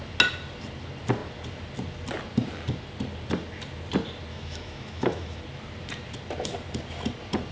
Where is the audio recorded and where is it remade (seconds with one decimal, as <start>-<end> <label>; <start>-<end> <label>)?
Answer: 0.0-4.3 recorded; 4.3-5.4 remade; 5.4-7.5 recorded